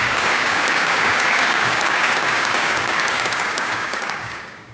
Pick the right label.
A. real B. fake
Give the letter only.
B